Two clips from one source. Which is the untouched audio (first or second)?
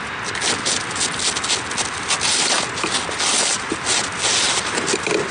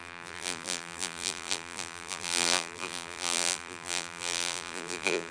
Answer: first